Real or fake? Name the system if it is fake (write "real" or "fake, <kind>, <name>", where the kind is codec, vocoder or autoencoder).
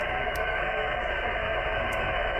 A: fake, codec, SNAC